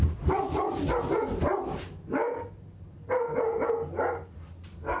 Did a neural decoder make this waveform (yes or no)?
no